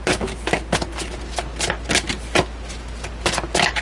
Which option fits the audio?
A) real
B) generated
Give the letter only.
A